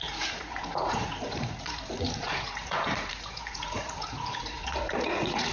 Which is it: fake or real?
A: fake